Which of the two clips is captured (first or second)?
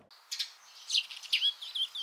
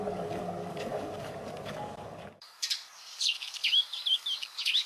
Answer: first